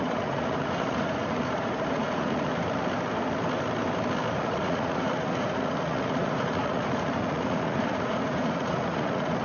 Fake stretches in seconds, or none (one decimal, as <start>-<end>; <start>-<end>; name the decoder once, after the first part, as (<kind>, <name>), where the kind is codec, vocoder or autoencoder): 0.0-2.5 (vocoder, Vocos); 4.4-9.4